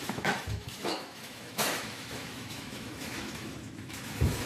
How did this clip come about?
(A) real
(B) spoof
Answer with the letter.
B